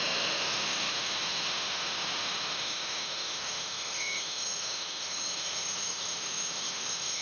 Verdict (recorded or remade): remade